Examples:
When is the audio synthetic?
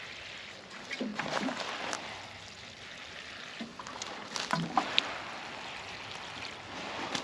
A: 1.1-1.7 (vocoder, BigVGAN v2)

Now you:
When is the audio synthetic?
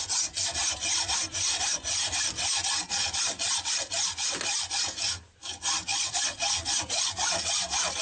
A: 5.9-7.1 (vocoder, Vocos)